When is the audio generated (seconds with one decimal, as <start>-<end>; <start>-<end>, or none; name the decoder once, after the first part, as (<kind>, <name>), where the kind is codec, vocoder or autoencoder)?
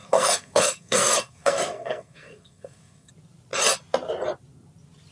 0.0-3.1 (codec, SNAC)